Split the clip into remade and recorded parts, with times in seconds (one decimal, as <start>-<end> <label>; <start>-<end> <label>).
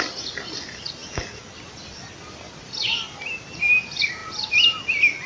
0.0-5.3 recorded